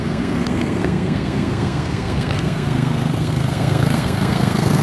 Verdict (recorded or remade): remade